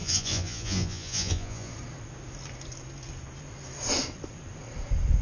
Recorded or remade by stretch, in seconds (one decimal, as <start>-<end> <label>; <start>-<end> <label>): 0.0-1.7 remade; 1.7-5.2 recorded